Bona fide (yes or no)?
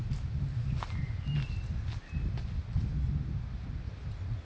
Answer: yes